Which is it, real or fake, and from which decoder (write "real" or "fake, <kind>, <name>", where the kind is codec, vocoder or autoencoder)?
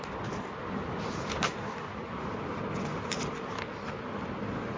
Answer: real